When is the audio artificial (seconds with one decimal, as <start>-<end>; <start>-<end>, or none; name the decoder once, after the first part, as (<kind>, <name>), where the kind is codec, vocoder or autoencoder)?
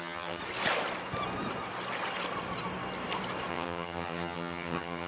0.0-0.4 (vocoder, HiFi-GAN); 3.5-5.1